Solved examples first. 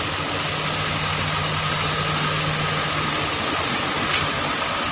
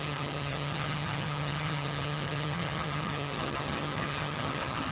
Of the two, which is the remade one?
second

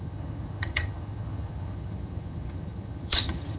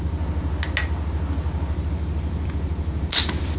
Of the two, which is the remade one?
first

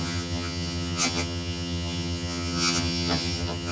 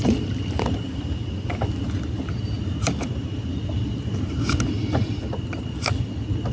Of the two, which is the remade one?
first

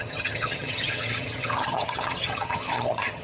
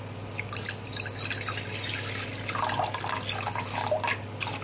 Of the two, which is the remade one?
first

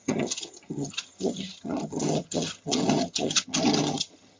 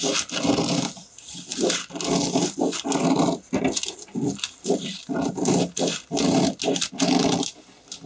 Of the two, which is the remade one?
first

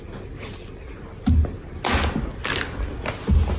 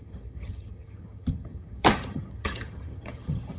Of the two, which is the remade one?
second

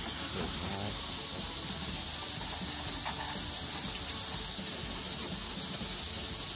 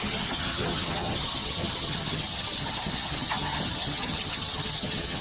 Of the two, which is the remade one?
second